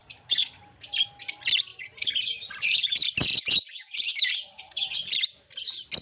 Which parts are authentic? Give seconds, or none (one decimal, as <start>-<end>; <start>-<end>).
0.6-1.7; 3.0-4.1; 4.9-6.0